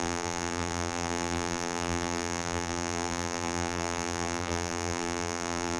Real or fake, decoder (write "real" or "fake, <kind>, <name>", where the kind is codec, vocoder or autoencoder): fake, vocoder, BigVGAN v2